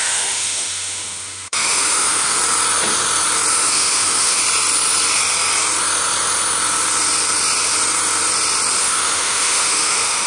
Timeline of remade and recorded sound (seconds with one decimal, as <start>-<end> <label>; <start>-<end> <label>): 0.0-2.4 remade; 2.4-3.5 recorded; 3.5-4.4 remade; 4.4-8.8 recorded; 8.8-10.3 remade